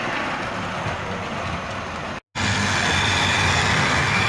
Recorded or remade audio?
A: recorded